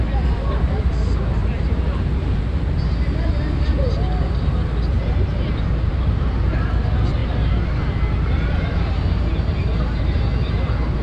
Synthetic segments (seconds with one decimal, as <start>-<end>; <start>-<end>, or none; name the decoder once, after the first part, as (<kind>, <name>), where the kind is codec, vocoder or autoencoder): 1.4-2.8 (vocoder, BigVGAN v2); 4.9-6.3